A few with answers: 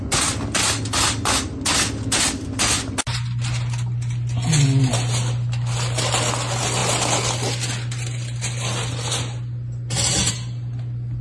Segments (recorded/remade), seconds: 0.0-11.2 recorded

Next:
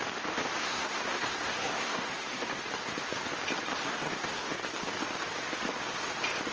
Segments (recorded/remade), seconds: 0.0-0.6 recorded; 0.6-2.6 remade; 2.6-3.8 recorded; 3.8-4.6 remade; 4.6-6.5 recorded

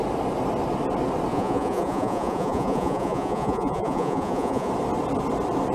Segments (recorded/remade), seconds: 0.0-1.3 recorded; 1.3-4.7 remade; 4.7-5.7 recorded

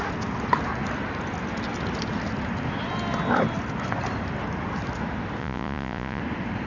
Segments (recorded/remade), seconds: 0.0-5.4 recorded; 5.4-6.2 remade; 6.2-6.7 recorded

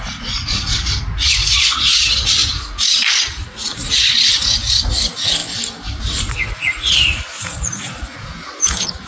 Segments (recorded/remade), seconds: 0.0-5.4 remade; 5.4-6.0 recorded; 6.0-9.1 remade

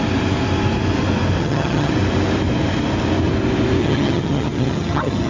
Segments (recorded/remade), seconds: 0.0-1.4 recorded; 1.4-1.9 remade; 1.9-3.8 recorded; 3.8-5.3 remade

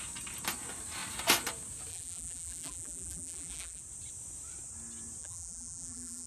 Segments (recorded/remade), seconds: 0.0-1.9 recorded; 1.9-3.8 remade; 3.8-5.2 recorded; 5.2-6.3 remade

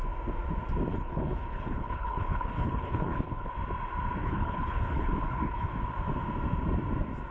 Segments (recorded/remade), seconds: 0.0-0.9 recorded; 0.9-3.5 remade; 3.5-4.2 recorded; 4.2-5.7 remade; 5.7-7.3 recorded